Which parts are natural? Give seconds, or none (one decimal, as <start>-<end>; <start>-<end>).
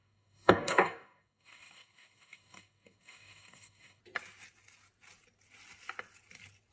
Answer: 4.0-6.7